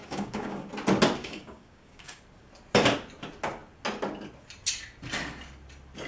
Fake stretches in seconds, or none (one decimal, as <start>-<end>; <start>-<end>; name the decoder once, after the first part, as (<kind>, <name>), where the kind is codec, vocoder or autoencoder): 0.0-0.7 (codec, DAC); 1.2-2.2